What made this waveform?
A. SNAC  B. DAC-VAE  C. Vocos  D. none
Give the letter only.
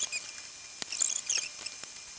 D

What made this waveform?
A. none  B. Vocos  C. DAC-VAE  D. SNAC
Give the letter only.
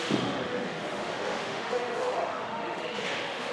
C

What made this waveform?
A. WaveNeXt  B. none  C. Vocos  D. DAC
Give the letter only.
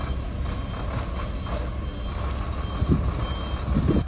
B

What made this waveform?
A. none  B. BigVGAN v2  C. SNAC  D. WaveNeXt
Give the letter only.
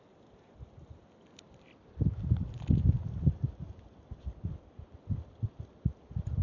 A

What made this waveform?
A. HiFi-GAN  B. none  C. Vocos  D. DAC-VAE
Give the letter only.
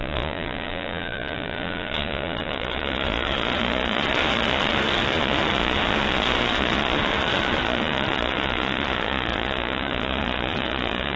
C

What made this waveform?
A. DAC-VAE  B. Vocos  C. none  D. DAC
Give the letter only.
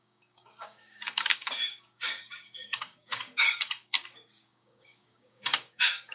D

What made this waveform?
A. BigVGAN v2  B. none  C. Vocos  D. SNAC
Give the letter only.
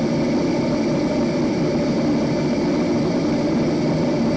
B